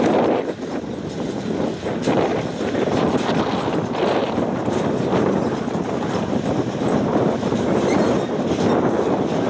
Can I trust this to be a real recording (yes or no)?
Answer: no